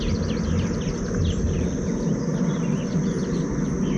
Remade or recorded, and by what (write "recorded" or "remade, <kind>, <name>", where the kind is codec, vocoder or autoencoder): recorded